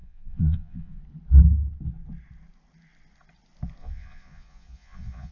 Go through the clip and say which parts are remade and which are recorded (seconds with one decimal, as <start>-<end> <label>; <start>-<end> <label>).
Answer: 0.0-1.0 remade; 1.0-3.8 recorded; 3.8-5.3 remade